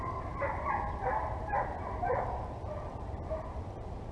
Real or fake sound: fake